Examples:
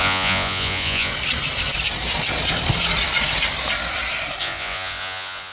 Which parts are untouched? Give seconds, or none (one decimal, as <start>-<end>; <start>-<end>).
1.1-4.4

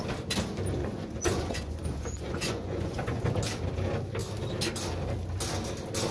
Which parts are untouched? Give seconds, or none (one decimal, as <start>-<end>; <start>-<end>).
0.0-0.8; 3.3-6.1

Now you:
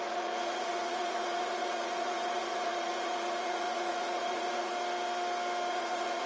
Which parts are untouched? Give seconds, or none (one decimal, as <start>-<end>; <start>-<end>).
4.7-5.7

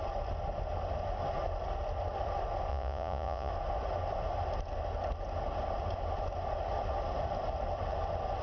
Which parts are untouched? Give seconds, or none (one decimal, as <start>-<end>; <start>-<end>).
0.0-2.7; 3.5-8.4

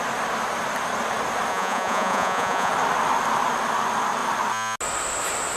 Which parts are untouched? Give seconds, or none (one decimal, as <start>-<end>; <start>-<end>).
0.0-1.5; 2.7-5.6